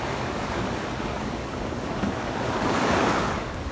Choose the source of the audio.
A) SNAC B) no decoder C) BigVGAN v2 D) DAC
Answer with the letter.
D